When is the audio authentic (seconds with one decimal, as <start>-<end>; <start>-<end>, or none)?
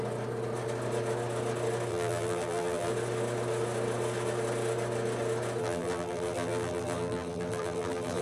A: 0.0-1.9; 2.9-5.6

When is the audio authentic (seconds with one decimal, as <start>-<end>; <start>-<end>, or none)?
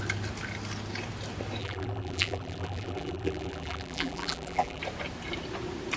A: 0.0-1.6; 4.8-6.0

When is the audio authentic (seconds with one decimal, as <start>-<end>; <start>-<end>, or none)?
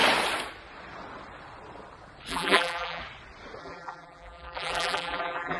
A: 0.0-2.3; 3.0-3.6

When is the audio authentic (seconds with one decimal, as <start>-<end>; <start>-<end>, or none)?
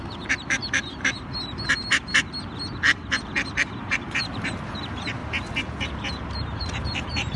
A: 5.2-5.8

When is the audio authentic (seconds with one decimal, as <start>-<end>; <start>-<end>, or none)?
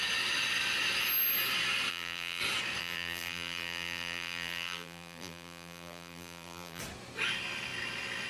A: 0.0-1.9; 2.4-2.8; 6.8-8.3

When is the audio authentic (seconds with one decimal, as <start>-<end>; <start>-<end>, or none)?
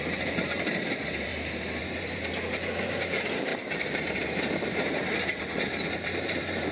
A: 1.3-1.8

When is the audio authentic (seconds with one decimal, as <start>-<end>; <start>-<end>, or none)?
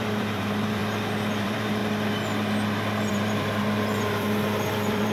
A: 0.8-1.4; 1.8-3.1